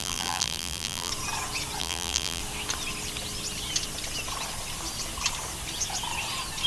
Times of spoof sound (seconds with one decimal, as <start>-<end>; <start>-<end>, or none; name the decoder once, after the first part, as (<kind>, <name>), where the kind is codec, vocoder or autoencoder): 0.0-1.1 (vocoder, BigVGAN v2); 1.8-2.4